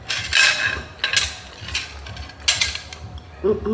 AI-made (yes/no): no